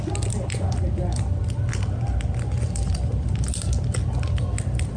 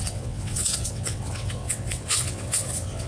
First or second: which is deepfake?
second